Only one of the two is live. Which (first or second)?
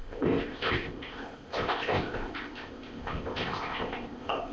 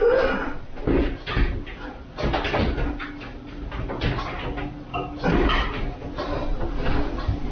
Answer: second